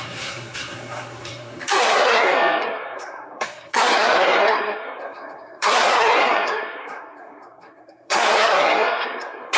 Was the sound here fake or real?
fake